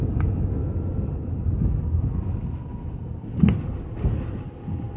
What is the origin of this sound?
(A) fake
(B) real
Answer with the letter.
B